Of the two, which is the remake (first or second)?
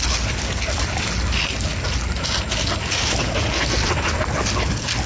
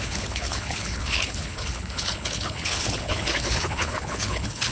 second